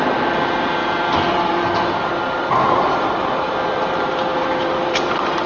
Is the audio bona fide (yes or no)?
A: no